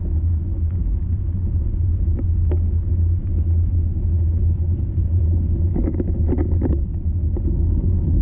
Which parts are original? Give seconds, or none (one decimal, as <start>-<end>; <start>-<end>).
0.0-0.8; 2.2-3.9; 5.2-6.4; 7.1-8.2